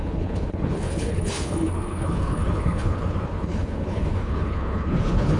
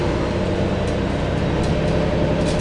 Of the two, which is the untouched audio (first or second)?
second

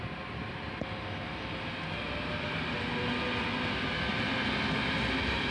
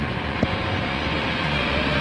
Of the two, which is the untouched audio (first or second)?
first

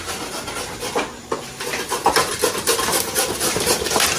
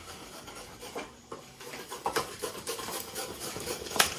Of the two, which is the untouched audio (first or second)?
first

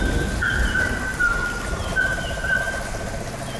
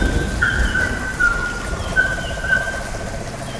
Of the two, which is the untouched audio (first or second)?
first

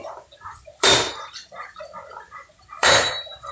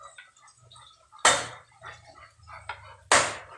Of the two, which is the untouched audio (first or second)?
second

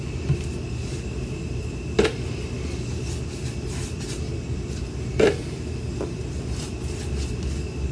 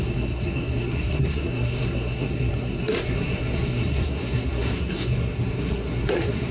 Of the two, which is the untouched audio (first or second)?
first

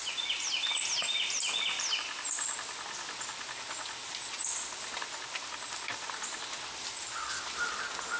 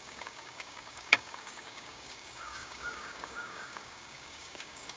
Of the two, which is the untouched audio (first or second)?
first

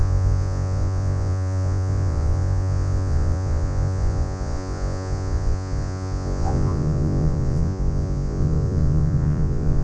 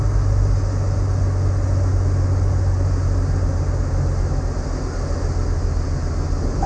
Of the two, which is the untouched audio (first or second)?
second